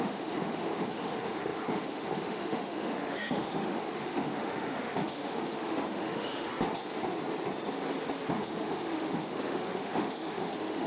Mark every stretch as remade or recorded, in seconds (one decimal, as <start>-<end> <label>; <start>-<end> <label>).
0.0-6.5 remade; 6.5-8.3 recorded; 8.3-10.9 remade